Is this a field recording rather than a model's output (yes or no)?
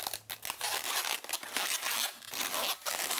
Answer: yes